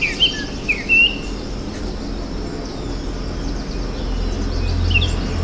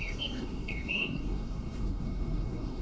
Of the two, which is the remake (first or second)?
second